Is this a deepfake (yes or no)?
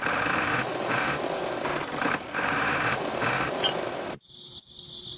no